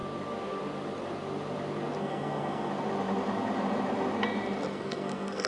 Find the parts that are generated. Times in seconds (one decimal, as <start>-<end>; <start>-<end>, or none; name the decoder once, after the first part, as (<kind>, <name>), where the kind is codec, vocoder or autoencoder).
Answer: 2.0-2.7 (codec, SNAC); 4.7-5.5